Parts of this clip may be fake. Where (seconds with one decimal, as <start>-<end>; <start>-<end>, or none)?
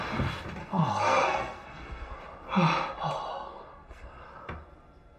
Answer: 0.6-2.2; 3.3-4.2